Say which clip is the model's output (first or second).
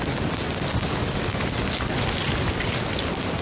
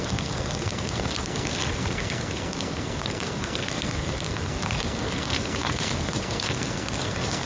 second